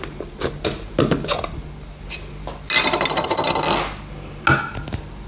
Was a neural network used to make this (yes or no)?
no